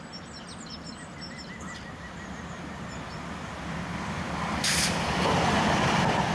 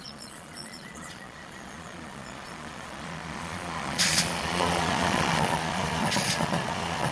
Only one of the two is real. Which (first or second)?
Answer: first